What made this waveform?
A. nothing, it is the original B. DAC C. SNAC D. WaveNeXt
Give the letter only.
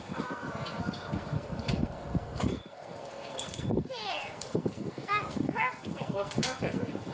C